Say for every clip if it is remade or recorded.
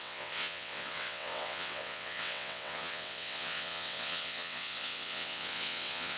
remade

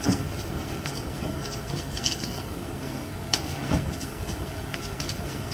remade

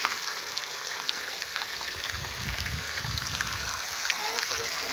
remade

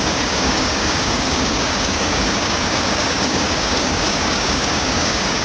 remade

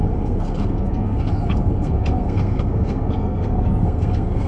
remade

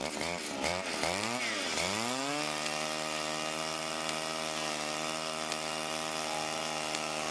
recorded